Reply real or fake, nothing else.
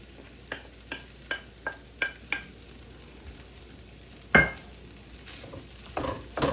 real